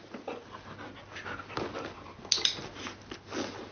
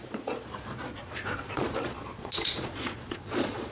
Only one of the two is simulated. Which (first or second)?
second